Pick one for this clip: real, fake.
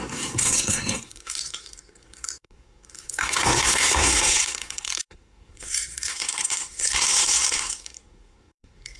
fake